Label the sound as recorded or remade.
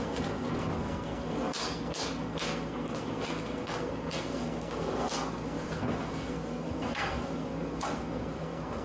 remade